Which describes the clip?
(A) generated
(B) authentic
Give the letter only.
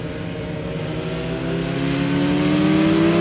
B